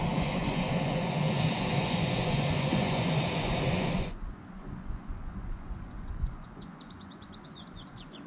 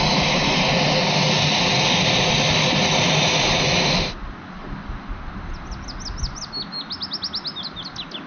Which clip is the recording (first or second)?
second